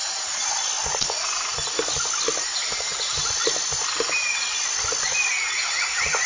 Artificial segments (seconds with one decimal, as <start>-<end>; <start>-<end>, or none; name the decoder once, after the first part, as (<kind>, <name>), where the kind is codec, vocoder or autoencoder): none